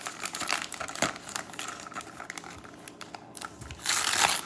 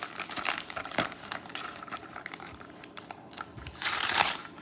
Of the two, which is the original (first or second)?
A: first